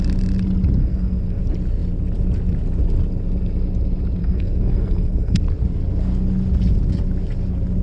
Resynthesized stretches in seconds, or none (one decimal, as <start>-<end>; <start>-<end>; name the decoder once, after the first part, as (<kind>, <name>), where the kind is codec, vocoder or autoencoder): 0.8-1.4 (codec, SNAC); 4.2-5.4